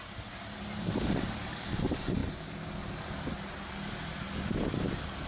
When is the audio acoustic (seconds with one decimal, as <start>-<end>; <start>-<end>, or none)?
0.0-5.3